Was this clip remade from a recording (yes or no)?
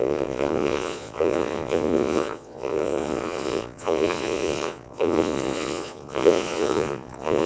yes